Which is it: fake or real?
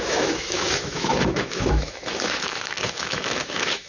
fake